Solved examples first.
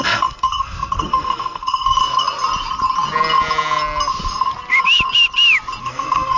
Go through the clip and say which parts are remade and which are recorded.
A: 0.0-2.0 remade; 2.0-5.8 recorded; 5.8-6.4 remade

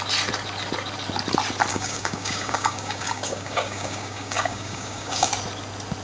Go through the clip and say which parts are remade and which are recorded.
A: 0.0-1.7 recorded; 1.7-5.3 remade; 5.3-6.0 recorded

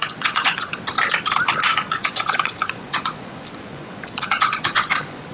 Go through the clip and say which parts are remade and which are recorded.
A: 0.0-0.7 remade; 0.7-1.7 recorded; 1.7-5.3 remade

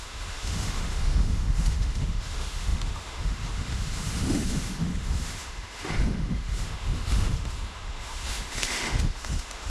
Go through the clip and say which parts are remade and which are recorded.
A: 0.0-9.7 remade

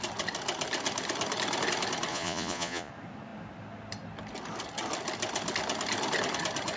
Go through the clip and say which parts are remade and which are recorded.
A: 0.0-2.1 recorded; 2.1-2.9 remade; 2.9-6.8 recorded

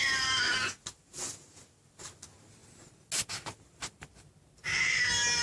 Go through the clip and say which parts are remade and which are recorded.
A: 0.0-5.4 recorded